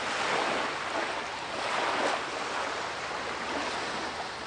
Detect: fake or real real